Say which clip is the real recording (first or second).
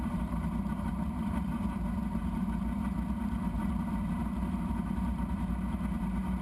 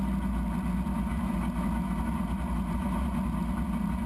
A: second